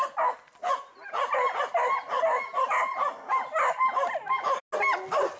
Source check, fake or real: real